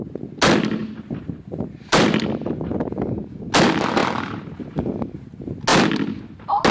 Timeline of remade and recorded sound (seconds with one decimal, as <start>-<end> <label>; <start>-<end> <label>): 0.0-0.8 recorded; 0.8-2.9 remade; 2.9-4.0 recorded; 4.0-5.0 remade; 5.0-6.7 recorded